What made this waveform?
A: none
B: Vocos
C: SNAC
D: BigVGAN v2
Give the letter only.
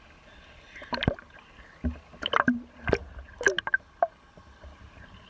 A